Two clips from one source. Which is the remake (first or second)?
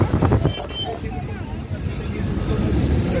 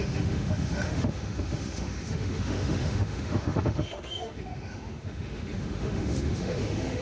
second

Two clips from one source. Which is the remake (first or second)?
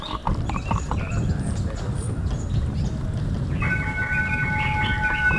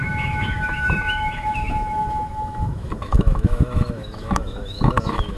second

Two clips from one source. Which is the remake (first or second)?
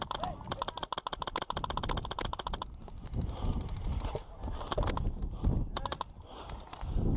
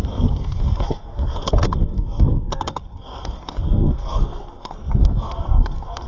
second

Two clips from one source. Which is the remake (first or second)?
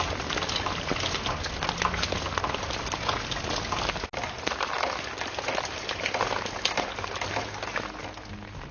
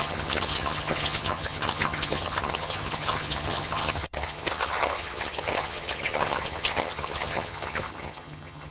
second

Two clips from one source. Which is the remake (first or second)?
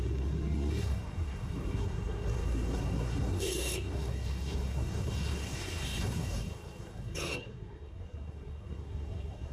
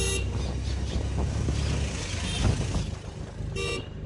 first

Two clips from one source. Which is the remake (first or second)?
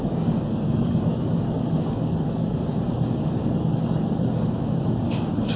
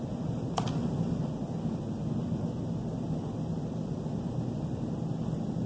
first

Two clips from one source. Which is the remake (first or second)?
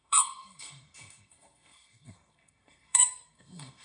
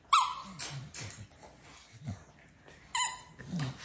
first